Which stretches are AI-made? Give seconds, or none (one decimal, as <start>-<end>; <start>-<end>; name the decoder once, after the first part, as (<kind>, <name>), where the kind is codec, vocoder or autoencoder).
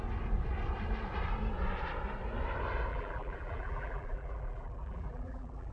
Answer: 2.9-5.7 (vocoder, BigVGAN v2)